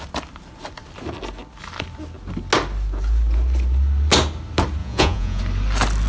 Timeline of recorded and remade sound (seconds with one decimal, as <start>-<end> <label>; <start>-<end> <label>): 0.0-4.8 recorded; 4.8-5.4 remade; 5.4-6.1 recorded